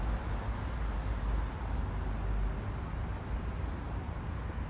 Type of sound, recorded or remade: recorded